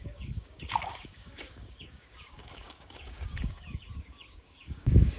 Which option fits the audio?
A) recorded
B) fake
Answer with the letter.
B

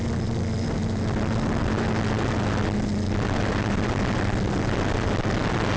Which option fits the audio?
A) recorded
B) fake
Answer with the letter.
A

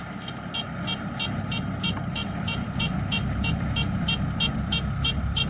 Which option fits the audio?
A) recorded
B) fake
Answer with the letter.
A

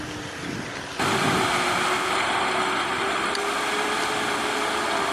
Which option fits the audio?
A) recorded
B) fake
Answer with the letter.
A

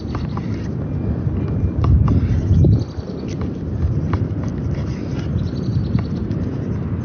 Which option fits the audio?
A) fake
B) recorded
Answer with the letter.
B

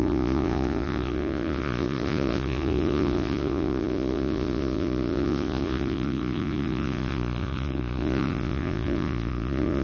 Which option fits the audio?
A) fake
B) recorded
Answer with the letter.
A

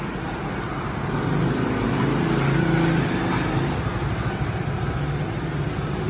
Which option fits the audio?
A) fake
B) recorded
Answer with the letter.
B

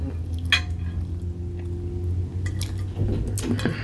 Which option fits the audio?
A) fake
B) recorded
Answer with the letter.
B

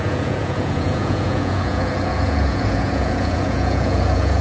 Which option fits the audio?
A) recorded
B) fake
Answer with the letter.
B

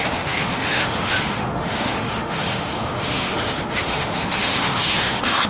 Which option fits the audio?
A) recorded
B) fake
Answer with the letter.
B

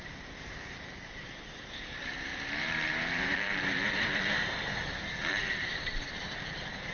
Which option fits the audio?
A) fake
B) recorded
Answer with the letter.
A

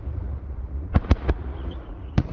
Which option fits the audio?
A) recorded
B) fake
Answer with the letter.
B